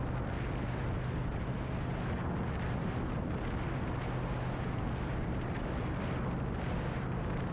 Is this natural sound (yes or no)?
yes